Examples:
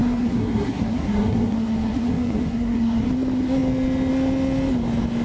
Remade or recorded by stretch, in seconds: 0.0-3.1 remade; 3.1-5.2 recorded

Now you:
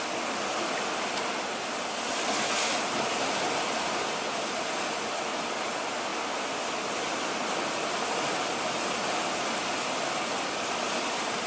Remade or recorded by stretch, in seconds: 0.0-11.5 recorded

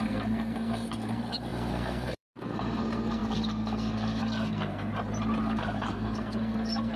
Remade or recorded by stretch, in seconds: 0.0-4.9 remade; 4.9-5.4 recorded; 5.4-7.0 remade

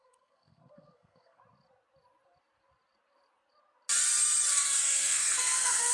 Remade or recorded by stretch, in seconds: 0.0-1.4 remade; 1.4-4.5 recorded; 4.5-5.9 remade

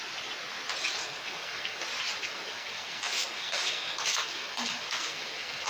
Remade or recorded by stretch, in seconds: 0.0-1.0 recorded; 1.0-1.8 remade; 1.8-2.2 recorded; 2.2-5.7 remade

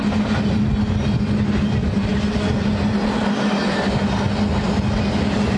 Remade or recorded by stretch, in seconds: 0.0-5.6 recorded